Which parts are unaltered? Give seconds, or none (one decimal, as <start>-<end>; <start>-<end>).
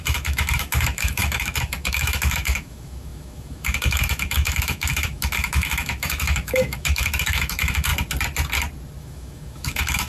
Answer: 7.9-9.0